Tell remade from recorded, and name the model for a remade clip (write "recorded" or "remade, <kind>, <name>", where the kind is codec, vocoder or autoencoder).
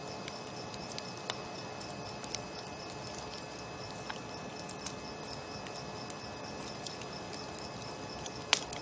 recorded